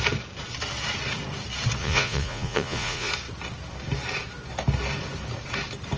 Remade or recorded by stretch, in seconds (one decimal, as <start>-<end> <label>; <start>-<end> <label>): 0.0-1.8 recorded; 1.8-3.1 remade; 3.1-6.0 recorded